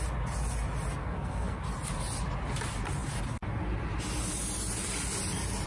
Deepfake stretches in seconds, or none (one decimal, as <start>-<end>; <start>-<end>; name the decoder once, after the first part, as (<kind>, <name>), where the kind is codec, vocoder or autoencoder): 1.0-1.6 (codec, SNAC)